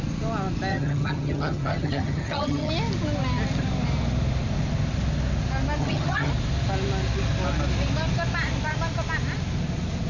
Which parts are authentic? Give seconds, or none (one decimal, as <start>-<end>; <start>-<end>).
0.0-0.7; 2.7-5.8; 6.3-10.1